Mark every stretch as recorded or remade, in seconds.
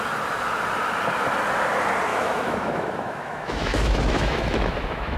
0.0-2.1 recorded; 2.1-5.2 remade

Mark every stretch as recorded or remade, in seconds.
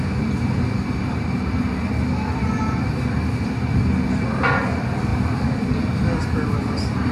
0.0-7.1 recorded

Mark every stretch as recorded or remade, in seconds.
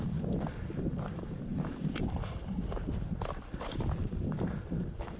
0.0-5.2 remade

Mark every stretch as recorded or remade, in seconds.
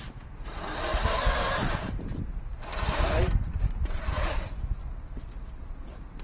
0.0-2.5 remade; 2.5-3.2 recorded; 3.2-6.2 remade